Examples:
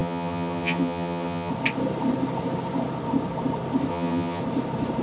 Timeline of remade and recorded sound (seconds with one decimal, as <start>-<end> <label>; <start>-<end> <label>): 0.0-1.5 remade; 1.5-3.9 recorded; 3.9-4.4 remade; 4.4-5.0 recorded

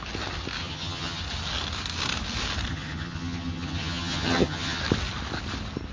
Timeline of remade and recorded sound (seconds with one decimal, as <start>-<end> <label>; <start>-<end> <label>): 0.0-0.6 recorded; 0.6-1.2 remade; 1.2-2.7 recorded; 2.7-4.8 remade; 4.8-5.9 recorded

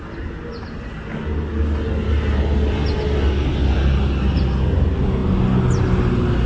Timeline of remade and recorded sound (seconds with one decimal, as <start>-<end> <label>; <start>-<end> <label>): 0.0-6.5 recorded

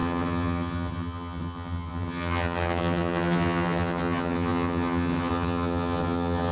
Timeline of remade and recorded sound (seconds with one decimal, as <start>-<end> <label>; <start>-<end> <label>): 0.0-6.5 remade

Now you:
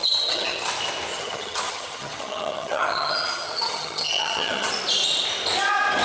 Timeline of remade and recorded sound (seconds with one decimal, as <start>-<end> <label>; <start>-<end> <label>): 0.0-0.7 remade; 0.7-1.1 recorded; 1.1-4.7 remade; 4.7-6.0 recorded